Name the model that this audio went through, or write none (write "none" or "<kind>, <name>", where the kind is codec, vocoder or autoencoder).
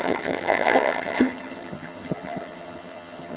vocoder, HiFi-GAN